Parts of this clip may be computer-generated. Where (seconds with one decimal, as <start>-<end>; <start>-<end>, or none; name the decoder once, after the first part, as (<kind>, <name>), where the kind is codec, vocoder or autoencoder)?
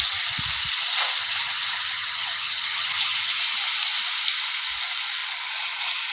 1.2-3.4 (vocoder, HiFi-GAN)